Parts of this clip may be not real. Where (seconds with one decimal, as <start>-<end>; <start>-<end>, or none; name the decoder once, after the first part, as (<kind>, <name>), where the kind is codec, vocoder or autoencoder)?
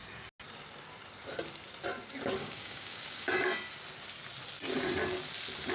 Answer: 2.4-3.3 (codec, DAC)